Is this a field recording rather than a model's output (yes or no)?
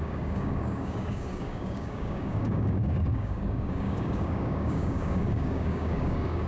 no